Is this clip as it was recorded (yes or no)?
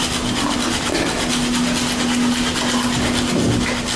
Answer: yes